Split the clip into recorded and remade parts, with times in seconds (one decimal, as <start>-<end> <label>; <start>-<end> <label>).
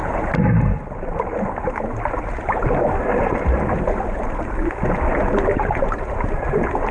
0.0-1.5 remade; 1.5-6.9 recorded